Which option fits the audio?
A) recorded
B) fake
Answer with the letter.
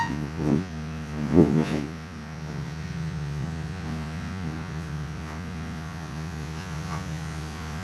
B